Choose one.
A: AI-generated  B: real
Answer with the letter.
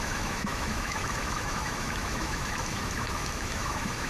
A